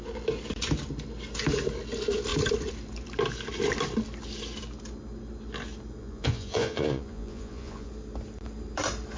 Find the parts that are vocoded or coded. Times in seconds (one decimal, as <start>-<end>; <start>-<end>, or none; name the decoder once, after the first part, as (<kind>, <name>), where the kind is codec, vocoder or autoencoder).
6.0-7.9 (vocoder, Vocos)